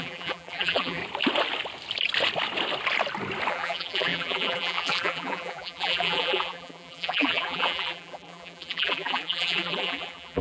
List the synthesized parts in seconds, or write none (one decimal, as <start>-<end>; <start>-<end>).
0.0-1.0; 3.5-10.4